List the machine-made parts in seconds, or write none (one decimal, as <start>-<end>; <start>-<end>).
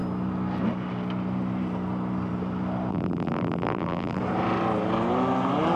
2.9-4.2